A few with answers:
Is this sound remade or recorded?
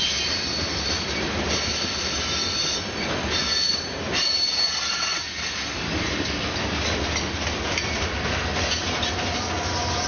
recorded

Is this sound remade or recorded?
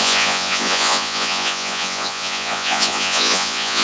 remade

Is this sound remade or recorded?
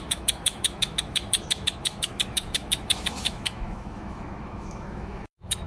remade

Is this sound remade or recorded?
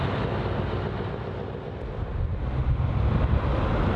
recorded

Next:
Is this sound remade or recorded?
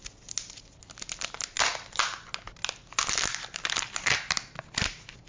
recorded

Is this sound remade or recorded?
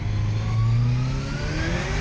recorded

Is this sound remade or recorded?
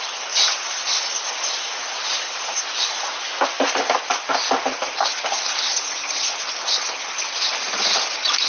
recorded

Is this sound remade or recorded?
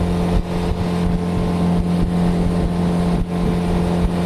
recorded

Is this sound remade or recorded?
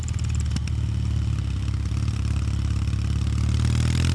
recorded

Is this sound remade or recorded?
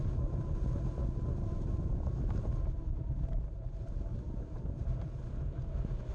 remade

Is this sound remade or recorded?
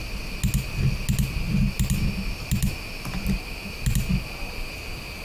recorded